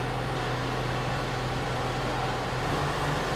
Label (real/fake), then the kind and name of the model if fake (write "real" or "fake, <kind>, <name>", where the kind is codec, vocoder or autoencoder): real